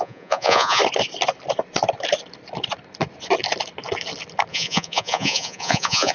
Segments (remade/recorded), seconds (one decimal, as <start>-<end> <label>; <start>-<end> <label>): 0.0-0.8 remade; 0.8-4.5 recorded; 4.5-6.1 remade